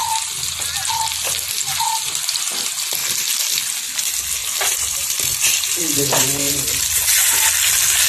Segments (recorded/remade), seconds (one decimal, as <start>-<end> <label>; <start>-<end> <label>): 0.0-4.4 recorded; 4.4-6.2 remade; 6.2-8.1 recorded